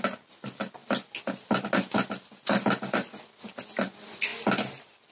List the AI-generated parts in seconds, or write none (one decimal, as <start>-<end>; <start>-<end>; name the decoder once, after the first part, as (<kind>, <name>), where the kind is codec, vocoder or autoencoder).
none